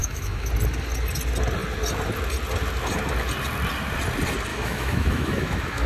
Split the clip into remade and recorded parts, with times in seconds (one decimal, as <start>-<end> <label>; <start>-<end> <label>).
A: 0.0-0.5 remade; 0.5-4.5 recorded; 4.5-5.9 remade